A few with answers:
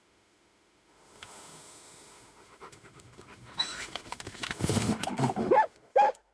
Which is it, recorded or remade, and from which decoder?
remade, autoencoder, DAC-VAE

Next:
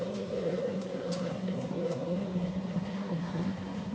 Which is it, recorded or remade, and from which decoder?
remade, codec, SNAC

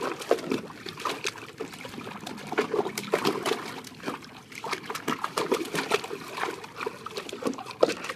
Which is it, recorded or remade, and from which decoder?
recorded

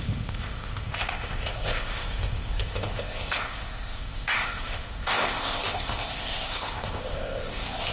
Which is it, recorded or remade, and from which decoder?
remade, codec, ZipCodec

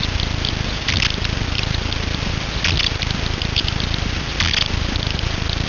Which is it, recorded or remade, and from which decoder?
recorded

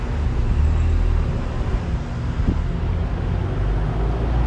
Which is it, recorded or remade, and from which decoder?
recorded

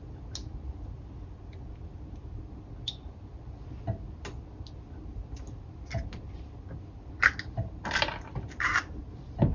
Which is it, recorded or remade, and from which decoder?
recorded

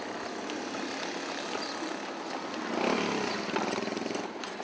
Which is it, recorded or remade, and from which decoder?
recorded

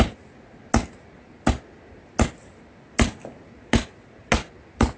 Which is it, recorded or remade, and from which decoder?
recorded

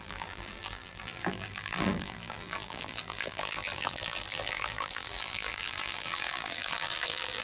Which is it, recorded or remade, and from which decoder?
remade, vocoder, BigVGAN v2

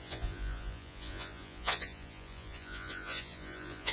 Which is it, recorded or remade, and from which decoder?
remade, vocoder, Vocos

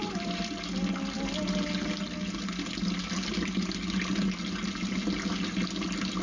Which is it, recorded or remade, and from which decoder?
recorded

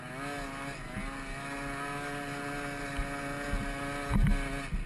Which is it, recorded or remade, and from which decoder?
recorded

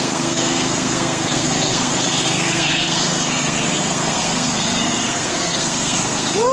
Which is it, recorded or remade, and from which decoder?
remade, codec, SNAC